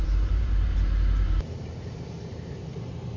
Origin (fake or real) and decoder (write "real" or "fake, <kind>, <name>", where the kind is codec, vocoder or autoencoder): fake, vocoder, BigVGAN v2